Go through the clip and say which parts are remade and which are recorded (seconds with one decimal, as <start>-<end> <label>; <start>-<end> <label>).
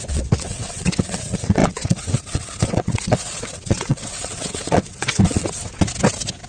0.0-5.6 remade; 5.6-6.5 recorded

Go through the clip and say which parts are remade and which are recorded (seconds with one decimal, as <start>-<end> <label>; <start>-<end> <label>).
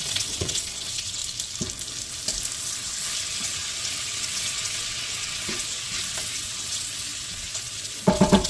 0.0-1.2 remade; 1.2-2.6 recorded; 2.6-8.5 remade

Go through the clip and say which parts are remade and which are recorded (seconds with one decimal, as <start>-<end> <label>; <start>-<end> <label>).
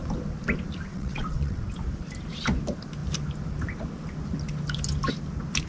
0.0-0.9 recorded; 0.9-1.6 remade; 1.6-5.7 recorded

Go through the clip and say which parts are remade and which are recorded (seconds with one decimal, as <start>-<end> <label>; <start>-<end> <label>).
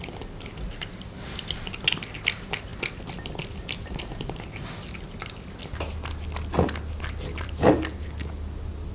0.0-8.9 recorded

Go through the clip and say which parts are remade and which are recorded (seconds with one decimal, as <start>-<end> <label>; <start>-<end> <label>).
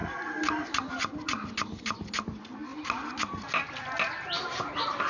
0.0-5.1 recorded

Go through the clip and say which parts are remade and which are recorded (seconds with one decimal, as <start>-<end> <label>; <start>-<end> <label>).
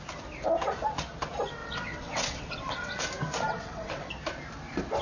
0.0-1.6 recorded; 1.6-3.0 remade; 3.0-3.5 recorded; 3.5-4.1 remade; 4.1-5.0 recorded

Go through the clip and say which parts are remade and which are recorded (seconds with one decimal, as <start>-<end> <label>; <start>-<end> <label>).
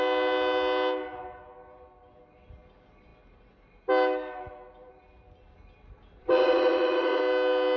0.0-6.2 recorded; 6.2-7.2 remade; 7.2-7.8 recorded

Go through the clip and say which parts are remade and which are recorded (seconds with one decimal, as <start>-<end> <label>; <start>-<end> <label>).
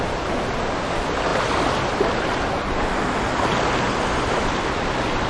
0.0-5.3 recorded